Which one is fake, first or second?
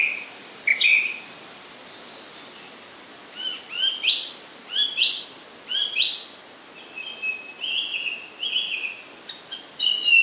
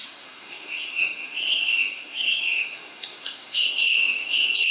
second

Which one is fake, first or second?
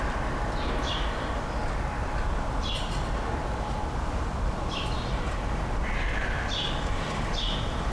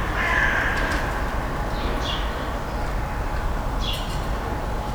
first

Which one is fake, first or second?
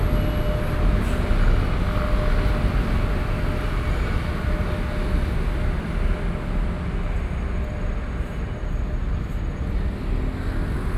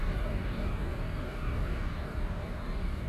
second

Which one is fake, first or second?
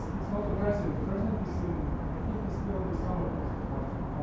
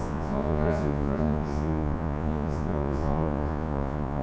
second